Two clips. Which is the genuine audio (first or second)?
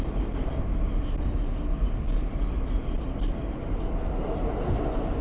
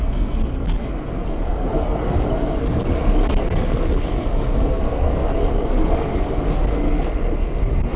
first